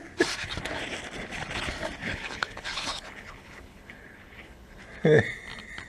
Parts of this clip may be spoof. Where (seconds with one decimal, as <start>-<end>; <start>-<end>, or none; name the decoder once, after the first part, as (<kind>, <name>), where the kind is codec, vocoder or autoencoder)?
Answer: 2.0-4.8 (codec, HILCodec)